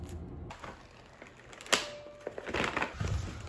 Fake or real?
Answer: real